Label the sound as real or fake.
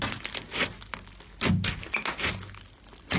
real